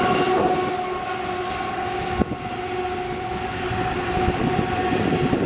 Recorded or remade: recorded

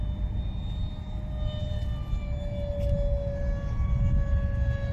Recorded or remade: recorded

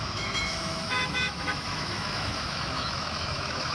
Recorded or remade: remade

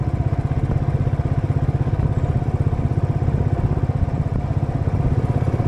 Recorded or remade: recorded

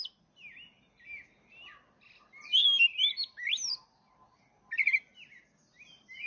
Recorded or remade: recorded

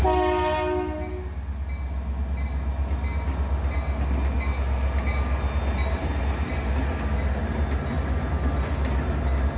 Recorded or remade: recorded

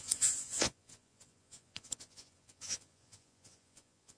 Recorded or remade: remade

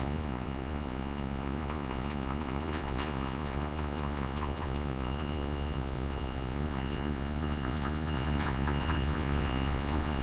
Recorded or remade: remade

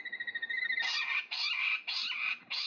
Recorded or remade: recorded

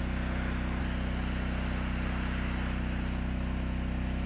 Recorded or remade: recorded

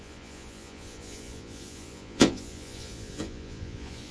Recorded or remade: remade